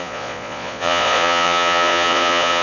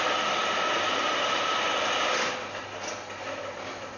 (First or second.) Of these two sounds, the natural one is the second